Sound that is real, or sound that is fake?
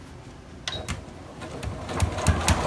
real